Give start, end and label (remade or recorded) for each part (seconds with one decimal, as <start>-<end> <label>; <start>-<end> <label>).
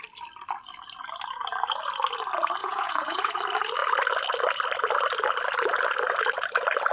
0.0-2.6 recorded; 2.6-3.4 remade; 3.4-6.9 recorded